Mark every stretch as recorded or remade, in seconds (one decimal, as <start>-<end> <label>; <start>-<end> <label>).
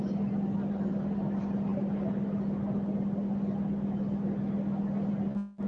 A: 0.0-5.7 recorded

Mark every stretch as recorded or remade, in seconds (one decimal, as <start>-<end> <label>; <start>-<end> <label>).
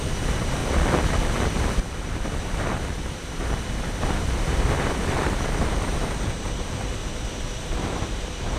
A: 0.0-0.6 remade; 0.6-2.0 recorded; 2.0-7.0 remade; 7.0-7.6 recorded; 7.6-8.6 remade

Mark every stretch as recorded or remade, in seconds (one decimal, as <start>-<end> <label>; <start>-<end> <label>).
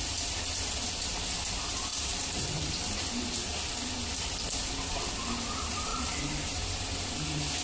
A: 0.0-1.9 recorded; 1.9-3.7 remade; 3.7-5.9 recorded; 5.9-6.6 remade; 6.6-7.6 recorded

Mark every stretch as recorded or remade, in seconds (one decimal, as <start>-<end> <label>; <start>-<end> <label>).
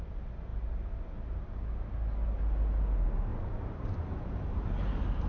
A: 0.0-3.3 recorded; 3.3-5.3 remade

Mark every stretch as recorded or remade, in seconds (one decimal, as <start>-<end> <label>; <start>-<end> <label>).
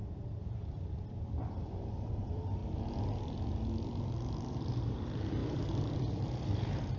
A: 0.0-2.6 remade; 2.6-4.5 recorded; 4.5-7.0 remade